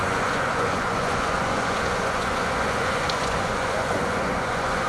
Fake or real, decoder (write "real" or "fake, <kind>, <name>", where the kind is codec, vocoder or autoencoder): fake, vocoder, Vocos